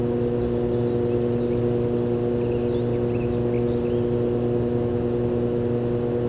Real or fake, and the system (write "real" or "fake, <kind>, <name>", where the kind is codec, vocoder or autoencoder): real